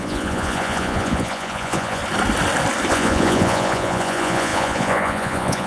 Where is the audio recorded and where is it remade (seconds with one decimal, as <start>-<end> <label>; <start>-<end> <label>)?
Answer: 0.0-2.0 remade; 2.0-2.9 recorded; 2.9-5.7 remade